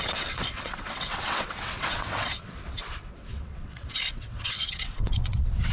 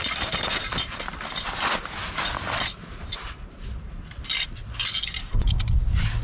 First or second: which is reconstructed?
first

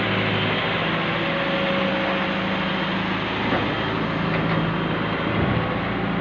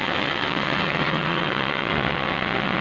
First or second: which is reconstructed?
second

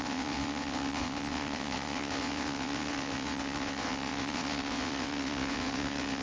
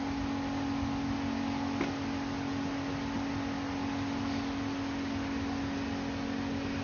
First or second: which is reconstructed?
first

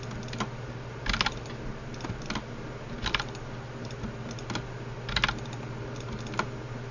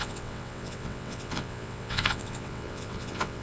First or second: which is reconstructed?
second